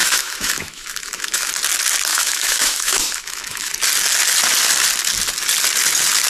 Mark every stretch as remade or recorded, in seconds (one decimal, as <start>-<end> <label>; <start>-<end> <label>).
0.0-1.5 remade; 1.5-2.1 recorded; 2.1-3.7 remade; 3.7-6.3 recorded